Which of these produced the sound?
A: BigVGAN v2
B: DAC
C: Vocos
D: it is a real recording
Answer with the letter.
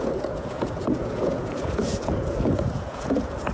C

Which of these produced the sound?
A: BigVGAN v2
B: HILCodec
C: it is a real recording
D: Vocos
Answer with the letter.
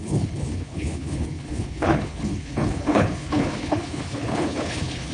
B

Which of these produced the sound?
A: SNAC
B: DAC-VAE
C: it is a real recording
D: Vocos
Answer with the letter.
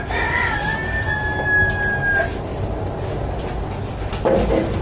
C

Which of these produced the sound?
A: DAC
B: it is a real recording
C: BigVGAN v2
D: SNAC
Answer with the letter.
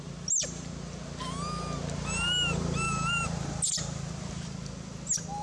B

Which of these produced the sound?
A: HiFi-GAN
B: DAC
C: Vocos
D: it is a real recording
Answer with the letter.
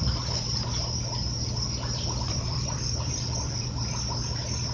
D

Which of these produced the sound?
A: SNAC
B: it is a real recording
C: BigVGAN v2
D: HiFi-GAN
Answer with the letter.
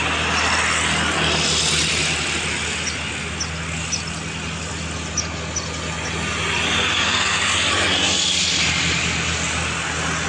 B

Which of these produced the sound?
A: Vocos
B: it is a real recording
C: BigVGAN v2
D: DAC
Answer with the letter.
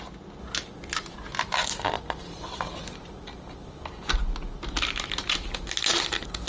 B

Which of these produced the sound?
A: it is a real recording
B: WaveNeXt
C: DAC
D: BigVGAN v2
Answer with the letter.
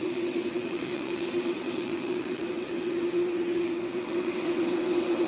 B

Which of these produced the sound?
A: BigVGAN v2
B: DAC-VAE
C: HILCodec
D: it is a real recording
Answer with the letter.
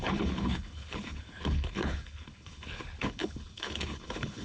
C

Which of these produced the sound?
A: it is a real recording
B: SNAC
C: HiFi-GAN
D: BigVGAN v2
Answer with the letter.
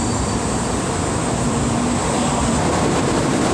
D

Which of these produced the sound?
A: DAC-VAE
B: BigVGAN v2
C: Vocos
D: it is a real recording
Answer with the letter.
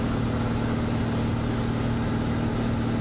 D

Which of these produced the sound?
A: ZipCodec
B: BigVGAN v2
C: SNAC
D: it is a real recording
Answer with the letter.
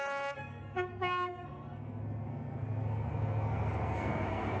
C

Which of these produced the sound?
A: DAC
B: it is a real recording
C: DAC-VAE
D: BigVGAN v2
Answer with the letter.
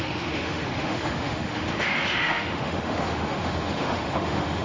C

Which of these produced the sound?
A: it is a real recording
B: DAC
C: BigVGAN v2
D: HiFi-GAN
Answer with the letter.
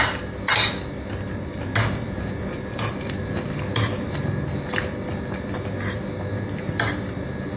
A